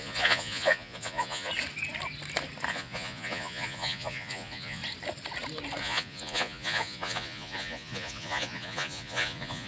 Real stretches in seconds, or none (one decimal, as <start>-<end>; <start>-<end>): 1.5-2.7; 4.8-5.8